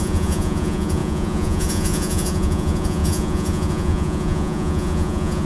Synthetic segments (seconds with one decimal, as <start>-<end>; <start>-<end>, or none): 0.0-5.4